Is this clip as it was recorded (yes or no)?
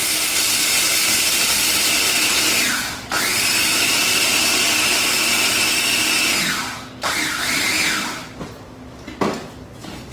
yes